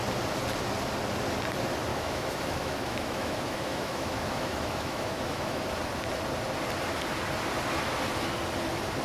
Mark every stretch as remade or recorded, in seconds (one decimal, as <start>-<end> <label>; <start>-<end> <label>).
0.0-1.9 recorded; 1.9-5.7 remade; 5.7-9.0 recorded